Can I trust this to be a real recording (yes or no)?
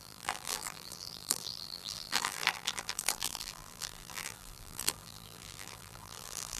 no